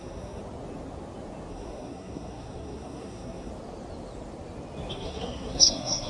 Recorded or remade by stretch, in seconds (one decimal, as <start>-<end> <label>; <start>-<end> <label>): 0.0-0.4 remade; 0.4-1.5 recorded; 1.5-3.5 remade; 3.5-4.9 recorded; 4.9-6.1 remade